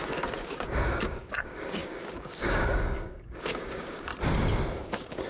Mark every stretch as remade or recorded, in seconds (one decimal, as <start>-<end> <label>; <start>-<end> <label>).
0.0-4.1 remade; 4.1-4.8 recorded; 4.8-5.3 remade